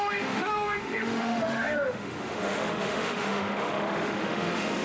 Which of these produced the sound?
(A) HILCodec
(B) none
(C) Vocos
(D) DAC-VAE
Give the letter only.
D